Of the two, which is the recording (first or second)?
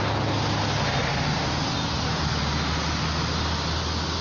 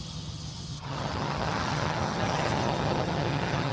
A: first